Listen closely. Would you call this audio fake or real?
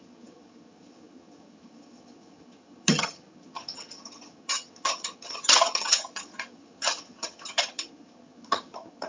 fake